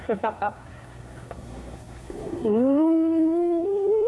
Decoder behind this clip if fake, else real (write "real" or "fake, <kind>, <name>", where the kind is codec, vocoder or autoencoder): fake, codec, SNAC